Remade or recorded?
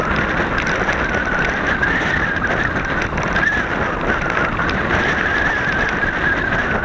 recorded